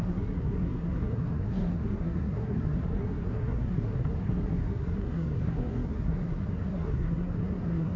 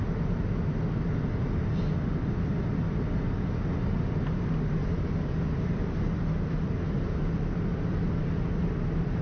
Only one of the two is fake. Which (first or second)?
first